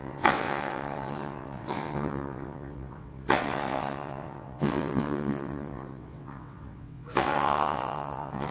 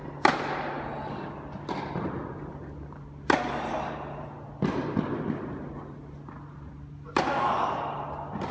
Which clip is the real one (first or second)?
second